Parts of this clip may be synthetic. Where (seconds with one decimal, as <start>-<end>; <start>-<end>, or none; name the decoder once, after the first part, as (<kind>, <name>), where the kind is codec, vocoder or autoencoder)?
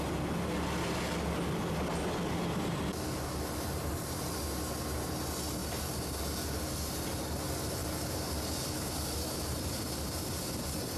5.6-6.1 (vocoder, BigVGAN v2); 7.8-10.6